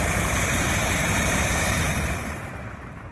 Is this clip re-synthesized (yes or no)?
yes